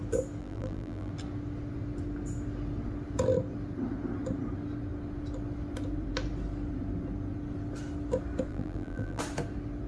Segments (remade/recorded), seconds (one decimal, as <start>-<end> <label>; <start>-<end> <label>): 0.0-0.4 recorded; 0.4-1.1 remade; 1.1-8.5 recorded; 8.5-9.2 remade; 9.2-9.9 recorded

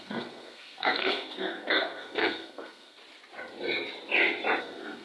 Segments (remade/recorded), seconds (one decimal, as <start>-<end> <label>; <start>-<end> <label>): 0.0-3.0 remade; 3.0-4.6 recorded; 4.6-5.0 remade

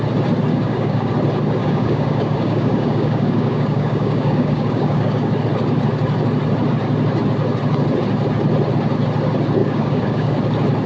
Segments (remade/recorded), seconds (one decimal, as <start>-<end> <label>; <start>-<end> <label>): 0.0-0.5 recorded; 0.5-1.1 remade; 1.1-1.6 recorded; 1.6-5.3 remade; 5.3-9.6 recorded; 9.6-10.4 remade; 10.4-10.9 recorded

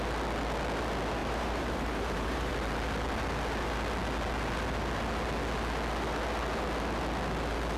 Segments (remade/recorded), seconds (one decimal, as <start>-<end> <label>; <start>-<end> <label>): 0.0-1.2 recorded; 1.2-2.5 remade; 2.5-7.8 recorded